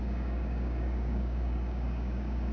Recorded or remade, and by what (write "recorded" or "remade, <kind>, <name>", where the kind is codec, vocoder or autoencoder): remade, codec, DAC